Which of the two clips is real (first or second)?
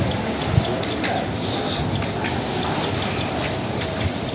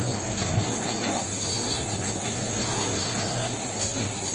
first